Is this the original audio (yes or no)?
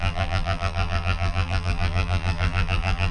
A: no